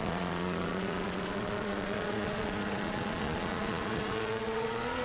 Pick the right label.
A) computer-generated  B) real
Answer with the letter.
A